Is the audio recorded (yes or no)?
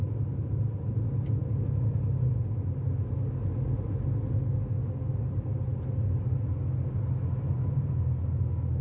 yes